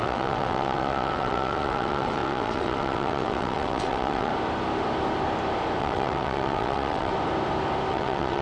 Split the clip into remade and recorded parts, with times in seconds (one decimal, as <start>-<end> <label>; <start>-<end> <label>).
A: 0.0-4.3 remade; 4.3-5.8 recorded; 5.8-7.1 remade; 7.1-7.9 recorded; 7.9-8.4 remade